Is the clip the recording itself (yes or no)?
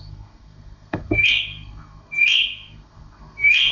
no